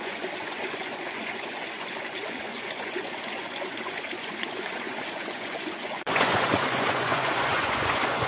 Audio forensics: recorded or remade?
remade